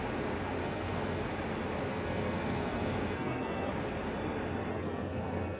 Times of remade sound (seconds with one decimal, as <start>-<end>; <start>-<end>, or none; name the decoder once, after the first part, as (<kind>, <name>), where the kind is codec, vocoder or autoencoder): 0.6-1.3 (codec, SNAC); 1.9-3.7; 4.7-5.6